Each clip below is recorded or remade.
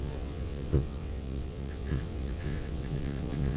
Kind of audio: remade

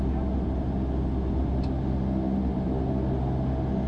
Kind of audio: recorded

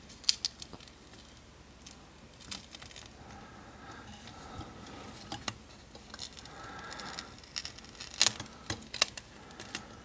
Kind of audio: recorded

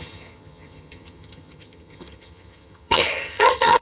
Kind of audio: remade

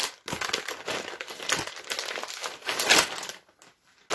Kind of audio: recorded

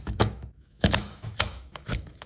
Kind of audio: remade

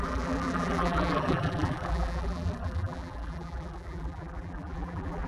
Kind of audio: remade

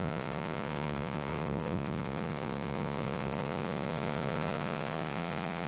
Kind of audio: remade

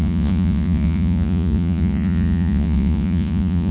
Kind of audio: remade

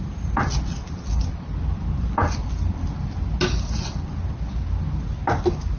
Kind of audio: recorded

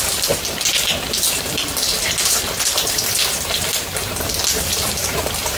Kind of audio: remade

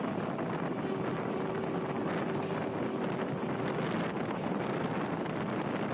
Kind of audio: recorded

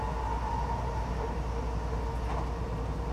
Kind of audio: recorded